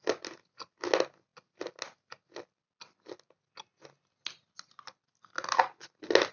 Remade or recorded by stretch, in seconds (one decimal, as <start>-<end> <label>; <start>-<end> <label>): 0.0-6.3 recorded